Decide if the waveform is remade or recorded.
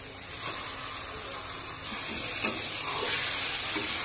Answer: recorded